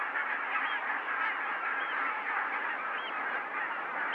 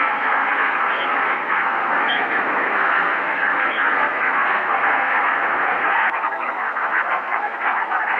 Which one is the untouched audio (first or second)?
first